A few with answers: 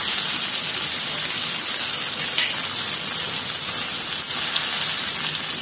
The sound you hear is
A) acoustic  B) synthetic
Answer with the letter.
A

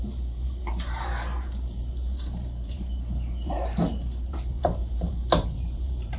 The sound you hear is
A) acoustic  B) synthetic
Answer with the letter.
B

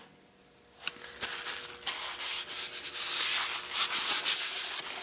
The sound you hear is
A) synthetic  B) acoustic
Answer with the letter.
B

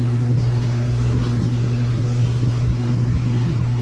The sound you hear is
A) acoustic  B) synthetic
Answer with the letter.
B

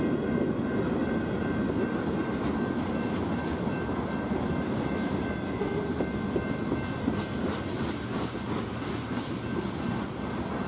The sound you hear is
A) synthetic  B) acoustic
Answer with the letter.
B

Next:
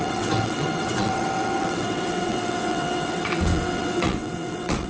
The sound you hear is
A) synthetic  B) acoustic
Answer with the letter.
A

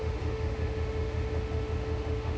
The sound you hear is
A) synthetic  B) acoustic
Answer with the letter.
A